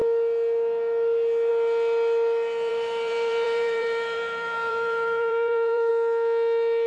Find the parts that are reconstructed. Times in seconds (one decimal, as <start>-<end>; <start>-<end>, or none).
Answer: 2.7-5.9